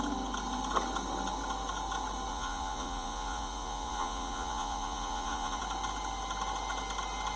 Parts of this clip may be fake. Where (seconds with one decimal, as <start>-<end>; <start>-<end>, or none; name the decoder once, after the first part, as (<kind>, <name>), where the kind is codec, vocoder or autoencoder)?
2.3-5.6 (vocoder, Vocos)